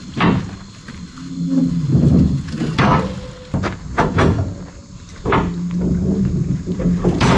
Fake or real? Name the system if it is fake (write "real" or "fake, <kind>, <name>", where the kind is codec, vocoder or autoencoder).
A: real